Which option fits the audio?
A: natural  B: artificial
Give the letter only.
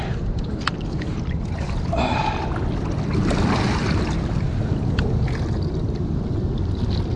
A